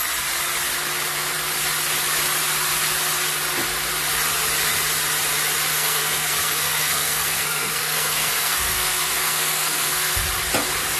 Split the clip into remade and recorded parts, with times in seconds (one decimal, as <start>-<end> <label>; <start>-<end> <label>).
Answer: 0.0-5.7 recorded; 5.7-10.2 remade; 10.2-11.0 recorded